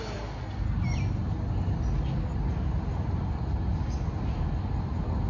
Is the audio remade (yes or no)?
no